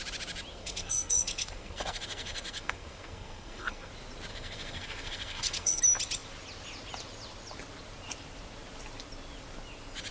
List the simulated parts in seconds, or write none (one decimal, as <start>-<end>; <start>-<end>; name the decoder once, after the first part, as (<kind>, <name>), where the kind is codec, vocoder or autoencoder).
0.5-3.9 (codec, SNAC); 4.3-5.8